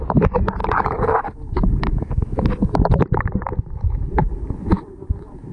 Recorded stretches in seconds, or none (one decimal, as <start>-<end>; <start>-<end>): 0.0-5.5